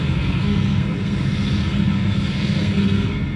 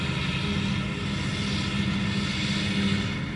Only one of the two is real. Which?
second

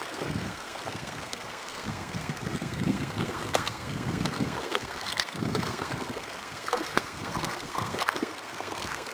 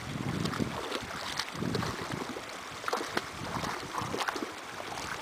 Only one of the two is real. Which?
second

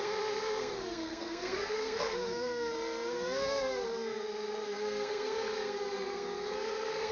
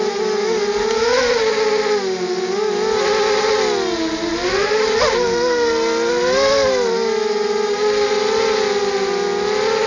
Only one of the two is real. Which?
second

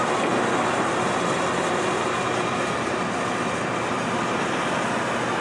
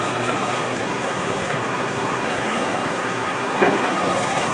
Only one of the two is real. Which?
first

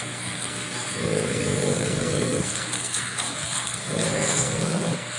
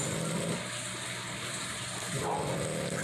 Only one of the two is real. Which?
second